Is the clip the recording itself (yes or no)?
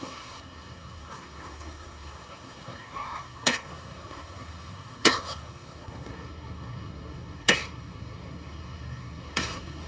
no